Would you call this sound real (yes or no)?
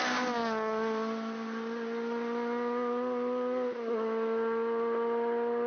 yes